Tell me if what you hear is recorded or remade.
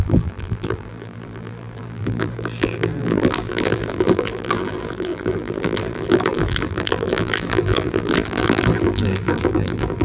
remade